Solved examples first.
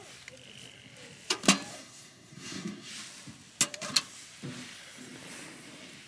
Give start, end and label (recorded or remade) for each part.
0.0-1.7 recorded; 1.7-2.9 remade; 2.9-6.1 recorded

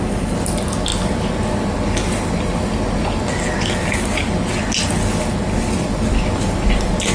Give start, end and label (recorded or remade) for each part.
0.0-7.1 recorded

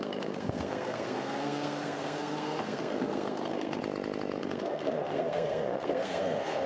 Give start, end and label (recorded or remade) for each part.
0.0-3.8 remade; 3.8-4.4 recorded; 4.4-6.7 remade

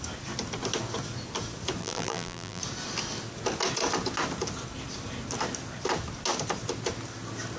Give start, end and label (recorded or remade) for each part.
0.0-1.8 recorded; 1.8-2.6 remade; 2.6-7.6 recorded

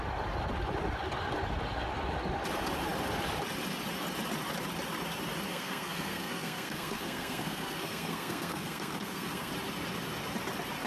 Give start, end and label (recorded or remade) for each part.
0.0-5.5 recorded; 5.5-9.5 remade; 9.5-10.9 recorded

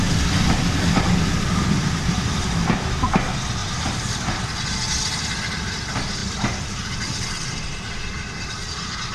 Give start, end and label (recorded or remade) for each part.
0.0-3.6 recorded; 3.6-4.1 remade; 4.1-6.2 recorded; 6.2-6.9 remade; 6.9-9.1 recorded

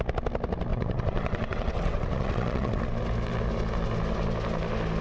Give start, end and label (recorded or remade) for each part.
0.0-0.7 recorded; 0.7-2.8 remade; 2.8-5.0 recorded

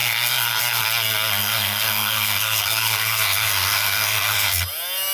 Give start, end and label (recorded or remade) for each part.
0.0-0.8 remade; 0.8-1.4 recorded; 1.4-4.5 remade; 4.5-5.1 recorded